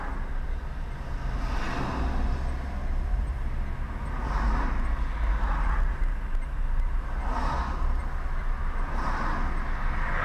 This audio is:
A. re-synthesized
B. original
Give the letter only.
B